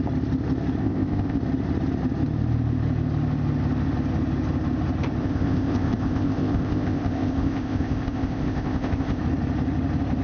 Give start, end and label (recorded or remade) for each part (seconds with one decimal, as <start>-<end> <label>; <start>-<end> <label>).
0.0-0.8 recorded; 0.8-1.4 remade; 1.4-5.2 recorded; 5.2-9.2 remade; 9.2-10.2 recorded